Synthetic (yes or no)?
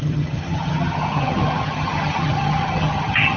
yes